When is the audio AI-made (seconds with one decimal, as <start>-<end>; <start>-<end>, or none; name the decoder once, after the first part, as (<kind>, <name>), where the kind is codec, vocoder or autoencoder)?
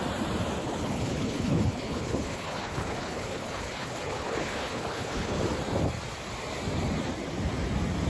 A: 0.6-5.4 (codec, HILCodec)